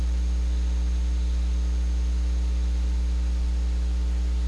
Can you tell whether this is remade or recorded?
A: recorded